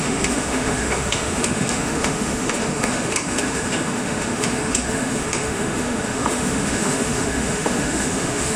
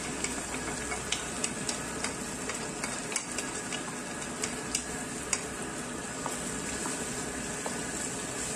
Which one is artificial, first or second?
first